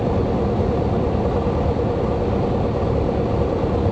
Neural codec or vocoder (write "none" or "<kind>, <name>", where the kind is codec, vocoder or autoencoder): none